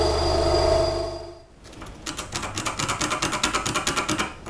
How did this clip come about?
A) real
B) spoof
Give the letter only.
A